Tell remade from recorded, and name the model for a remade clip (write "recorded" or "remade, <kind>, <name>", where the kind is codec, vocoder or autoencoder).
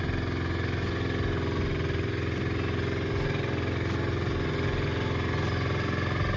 recorded